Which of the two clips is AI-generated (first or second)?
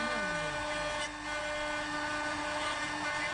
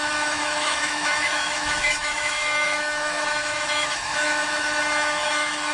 second